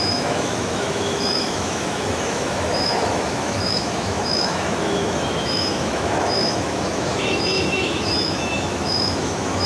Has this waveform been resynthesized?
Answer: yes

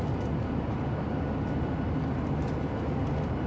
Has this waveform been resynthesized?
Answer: no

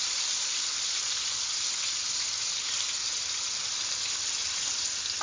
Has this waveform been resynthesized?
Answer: no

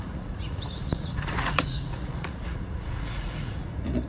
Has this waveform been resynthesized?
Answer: yes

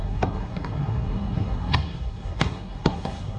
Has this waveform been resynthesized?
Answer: yes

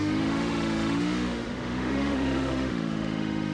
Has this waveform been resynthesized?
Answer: yes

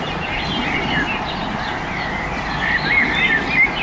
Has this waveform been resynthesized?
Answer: no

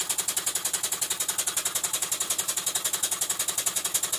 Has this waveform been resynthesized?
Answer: no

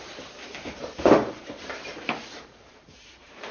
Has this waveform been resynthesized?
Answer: yes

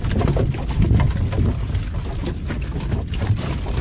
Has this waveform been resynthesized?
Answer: no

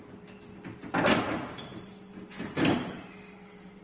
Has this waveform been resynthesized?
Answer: no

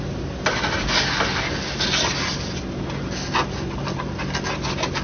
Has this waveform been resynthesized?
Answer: no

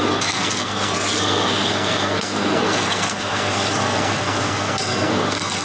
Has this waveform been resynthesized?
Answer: yes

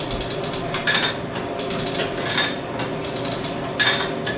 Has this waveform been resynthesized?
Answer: no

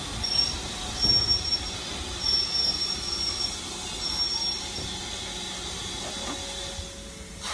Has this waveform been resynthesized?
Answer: no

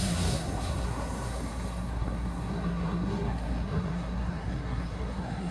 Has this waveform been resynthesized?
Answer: yes